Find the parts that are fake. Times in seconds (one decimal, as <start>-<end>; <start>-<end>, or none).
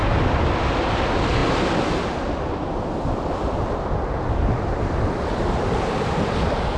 none